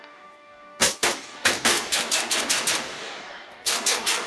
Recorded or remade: remade